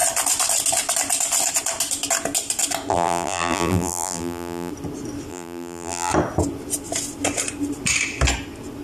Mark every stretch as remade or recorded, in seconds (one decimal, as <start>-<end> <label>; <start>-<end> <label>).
0.0-2.9 recorded; 2.9-4.7 remade; 4.7-5.3 recorded; 5.3-6.1 remade; 6.1-8.8 recorded